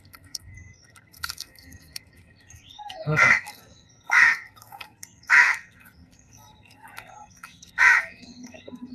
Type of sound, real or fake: fake